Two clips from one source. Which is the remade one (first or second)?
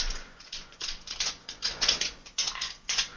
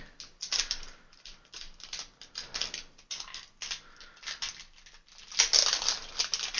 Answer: first